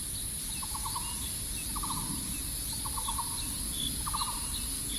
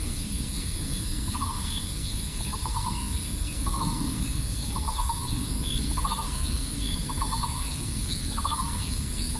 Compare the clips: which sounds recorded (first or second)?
first